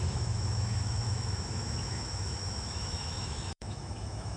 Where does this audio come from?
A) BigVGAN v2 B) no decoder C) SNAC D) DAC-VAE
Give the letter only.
D